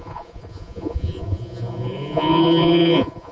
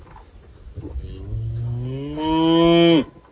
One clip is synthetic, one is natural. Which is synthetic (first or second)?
first